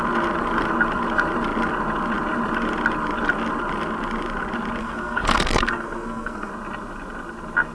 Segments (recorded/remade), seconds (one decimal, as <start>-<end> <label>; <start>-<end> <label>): 0.0-4.8 recorded; 4.8-6.5 remade; 6.5-7.7 recorded